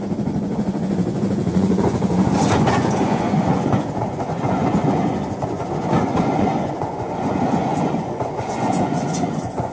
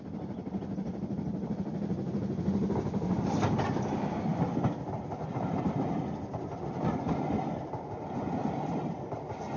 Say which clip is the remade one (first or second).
first